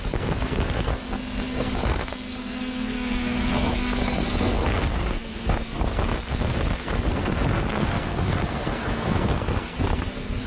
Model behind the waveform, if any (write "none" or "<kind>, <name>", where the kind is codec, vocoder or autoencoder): codec, SNAC